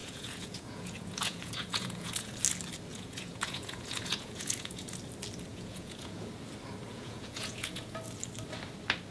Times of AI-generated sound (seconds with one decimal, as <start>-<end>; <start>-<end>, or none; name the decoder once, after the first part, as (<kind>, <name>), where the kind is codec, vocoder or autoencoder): 0.0-2.4 (vocoder, Vocos); 2.9-5.0; 5.5-6.3; 6.9-8.0